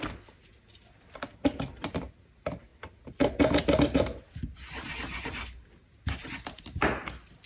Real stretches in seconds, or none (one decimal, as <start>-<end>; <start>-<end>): 0.0-7.5